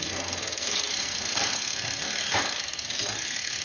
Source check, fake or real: fake